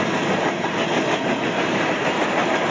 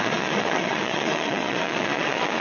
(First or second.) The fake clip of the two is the second